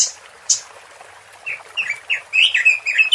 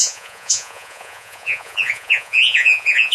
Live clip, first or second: first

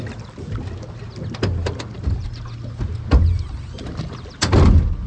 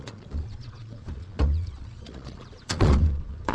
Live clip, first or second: first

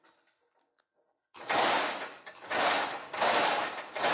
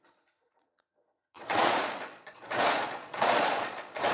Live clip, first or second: first